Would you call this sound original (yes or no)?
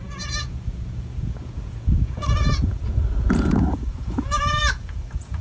no